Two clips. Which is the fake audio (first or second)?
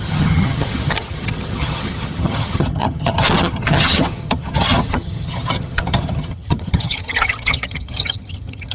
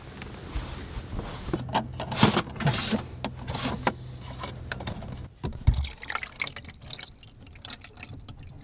first